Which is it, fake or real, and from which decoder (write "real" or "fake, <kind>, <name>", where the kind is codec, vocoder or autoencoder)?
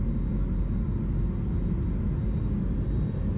real